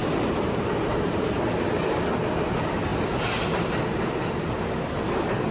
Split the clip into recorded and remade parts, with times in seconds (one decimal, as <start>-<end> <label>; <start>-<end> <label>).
0.0-1.7 remade; 1.7-5.5 recorded